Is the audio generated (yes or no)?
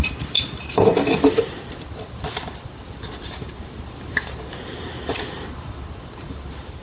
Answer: yes